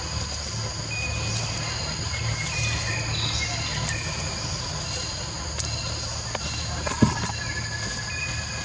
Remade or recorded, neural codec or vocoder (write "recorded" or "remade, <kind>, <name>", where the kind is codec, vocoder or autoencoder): recorded